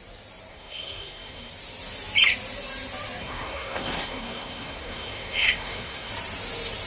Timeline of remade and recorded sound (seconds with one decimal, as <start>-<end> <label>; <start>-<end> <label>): 0.0-0.5 recorded; 0.5-1.5 remade; 1.5-3.2 recorded; 3.2-6.1 remade; 6.1-6.9 recorded